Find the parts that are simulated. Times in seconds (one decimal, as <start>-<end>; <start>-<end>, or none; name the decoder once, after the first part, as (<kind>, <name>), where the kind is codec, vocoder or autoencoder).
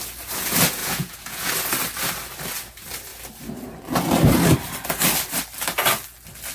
0.8-1.5 (vocoder, Vocos)